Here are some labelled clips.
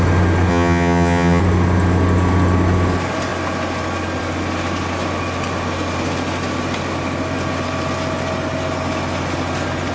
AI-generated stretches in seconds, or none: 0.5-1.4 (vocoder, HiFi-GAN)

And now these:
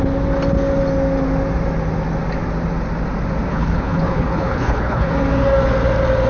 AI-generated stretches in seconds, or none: 3.5-5.1 (codec, HILCodec)

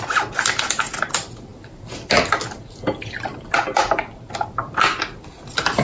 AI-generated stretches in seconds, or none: none